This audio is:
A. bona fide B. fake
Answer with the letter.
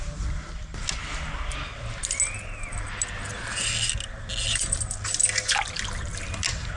A